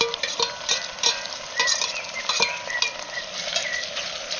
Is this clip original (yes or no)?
yes